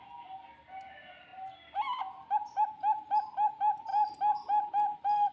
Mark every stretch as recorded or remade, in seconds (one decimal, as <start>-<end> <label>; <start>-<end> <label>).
0.0-5.3 recorded